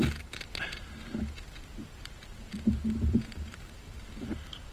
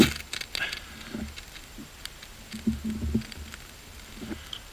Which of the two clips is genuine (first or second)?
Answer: second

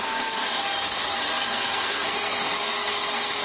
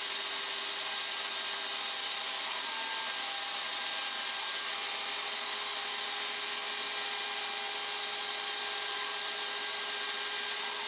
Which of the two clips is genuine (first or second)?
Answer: second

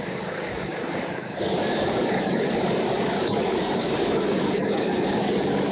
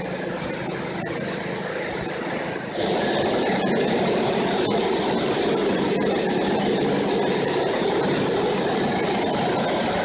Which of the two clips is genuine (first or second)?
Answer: second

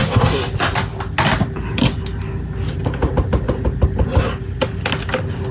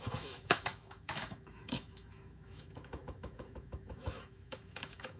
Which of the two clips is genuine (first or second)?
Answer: first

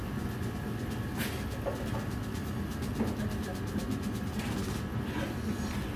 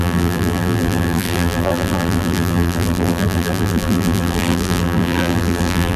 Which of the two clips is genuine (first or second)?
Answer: first